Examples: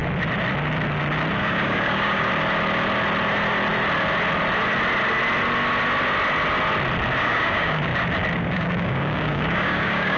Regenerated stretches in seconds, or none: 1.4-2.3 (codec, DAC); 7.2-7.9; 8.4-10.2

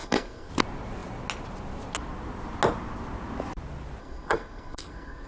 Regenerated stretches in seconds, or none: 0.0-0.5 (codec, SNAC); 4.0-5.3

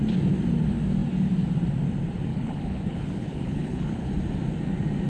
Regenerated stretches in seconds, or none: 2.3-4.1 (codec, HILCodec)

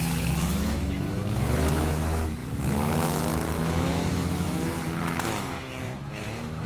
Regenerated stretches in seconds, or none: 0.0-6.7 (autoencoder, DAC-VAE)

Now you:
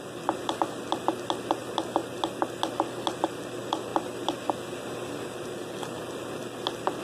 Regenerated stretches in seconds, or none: none